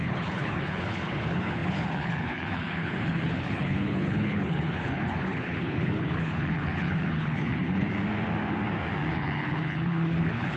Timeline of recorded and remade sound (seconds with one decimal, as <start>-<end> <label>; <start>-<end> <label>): 0.0-7.9 remade; 7.9-9.1 recorded; 9.1-10.6 remade